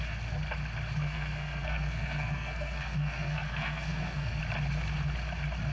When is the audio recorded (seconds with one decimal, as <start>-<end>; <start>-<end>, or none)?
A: 0.0-1.0; 4.4-5.7